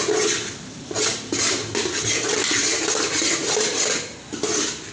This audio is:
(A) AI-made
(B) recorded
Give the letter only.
B